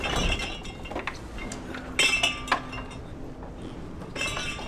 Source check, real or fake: real